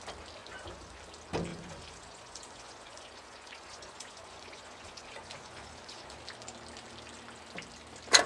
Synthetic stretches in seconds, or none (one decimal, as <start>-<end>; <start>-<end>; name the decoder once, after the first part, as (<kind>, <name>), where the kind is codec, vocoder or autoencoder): 0.4-1.0 (vocoder, Vocos); 1.5-6.2